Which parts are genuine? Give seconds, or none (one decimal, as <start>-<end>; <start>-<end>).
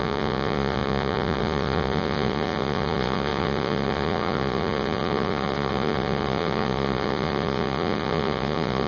none